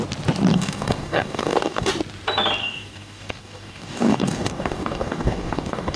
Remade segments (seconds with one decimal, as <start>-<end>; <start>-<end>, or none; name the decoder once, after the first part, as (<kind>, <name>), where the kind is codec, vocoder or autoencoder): 0.5-1.9 (codec, DAC); 2.6-6.0